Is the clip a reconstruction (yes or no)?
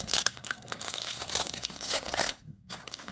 yes